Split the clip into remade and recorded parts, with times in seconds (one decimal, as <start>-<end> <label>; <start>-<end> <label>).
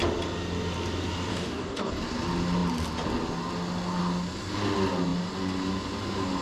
0.0-1.3 recorded; 1.3-1.9 remade; 1.9-6.4 recorded